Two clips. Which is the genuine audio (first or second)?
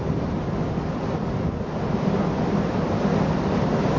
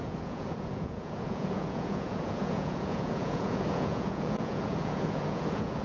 first